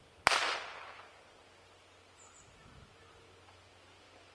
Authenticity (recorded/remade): recorded